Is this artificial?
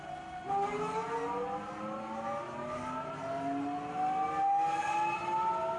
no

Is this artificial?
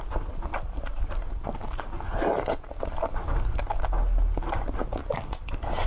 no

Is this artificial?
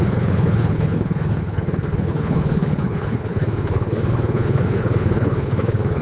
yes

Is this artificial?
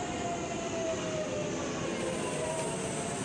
no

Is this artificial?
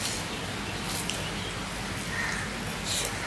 no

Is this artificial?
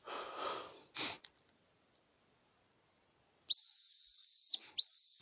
no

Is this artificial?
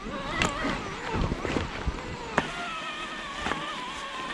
no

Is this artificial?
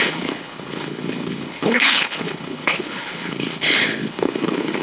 yes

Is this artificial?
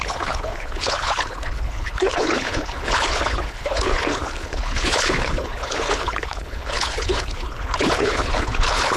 yes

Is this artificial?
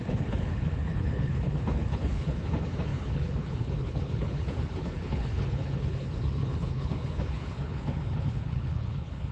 yes